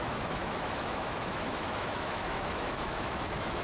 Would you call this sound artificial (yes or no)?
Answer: yes